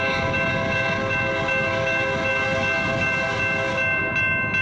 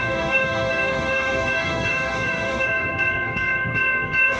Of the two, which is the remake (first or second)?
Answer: second